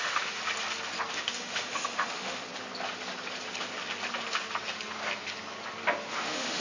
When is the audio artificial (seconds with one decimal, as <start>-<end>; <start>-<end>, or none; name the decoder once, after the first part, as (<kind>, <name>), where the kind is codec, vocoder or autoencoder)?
0.0-0.4 (autoencoder, DAC-VAE); 1.1-2.4; 6.1-6.6